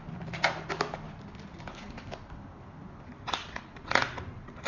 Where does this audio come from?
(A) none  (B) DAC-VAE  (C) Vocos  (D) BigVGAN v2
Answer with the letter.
A